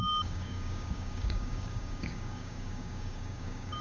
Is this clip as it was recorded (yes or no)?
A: no